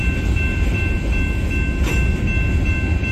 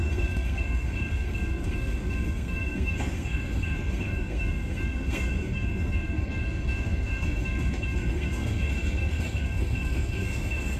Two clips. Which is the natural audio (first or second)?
first